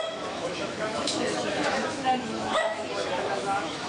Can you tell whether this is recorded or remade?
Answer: remade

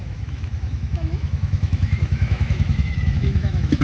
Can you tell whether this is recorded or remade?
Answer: remade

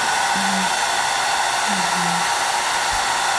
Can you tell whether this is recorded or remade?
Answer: recorded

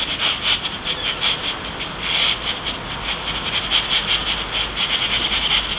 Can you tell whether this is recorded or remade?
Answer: recorded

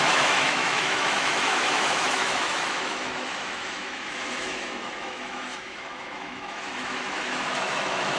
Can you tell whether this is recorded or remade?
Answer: remade